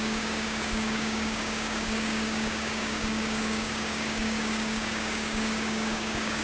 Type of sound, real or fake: fake